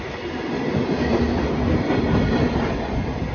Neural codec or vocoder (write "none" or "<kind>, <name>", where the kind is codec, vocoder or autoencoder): none